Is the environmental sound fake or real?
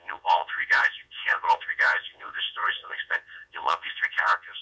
fake